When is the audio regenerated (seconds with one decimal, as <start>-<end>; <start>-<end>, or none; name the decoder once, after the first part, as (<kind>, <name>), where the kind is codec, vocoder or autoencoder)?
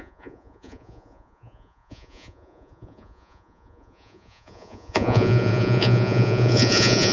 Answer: 0.0-7.1 (vocoder, Vocos)